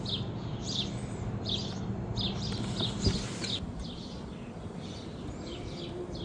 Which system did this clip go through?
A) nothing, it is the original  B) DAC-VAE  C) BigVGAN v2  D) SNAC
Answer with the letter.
C